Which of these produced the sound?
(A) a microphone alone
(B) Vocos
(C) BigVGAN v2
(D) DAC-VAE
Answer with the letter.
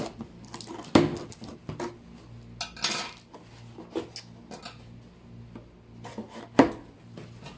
A